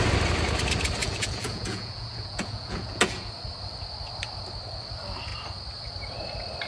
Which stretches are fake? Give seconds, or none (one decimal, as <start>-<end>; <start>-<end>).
1.0-3.3